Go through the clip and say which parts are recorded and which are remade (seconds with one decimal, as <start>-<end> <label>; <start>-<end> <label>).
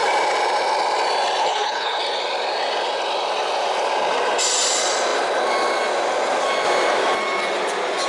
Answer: 0.0-1.4 recorded; 1.4-2.0 remade; 2.0-8.1 recorded